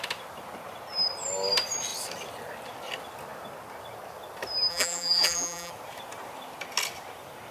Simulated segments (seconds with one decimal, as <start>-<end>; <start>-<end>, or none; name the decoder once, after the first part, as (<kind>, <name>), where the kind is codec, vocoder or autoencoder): 4.7-5.7 (vocoder, BigVGAN v2)